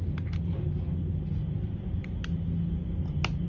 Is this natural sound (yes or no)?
yes